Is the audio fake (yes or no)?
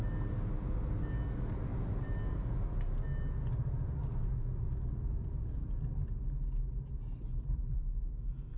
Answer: no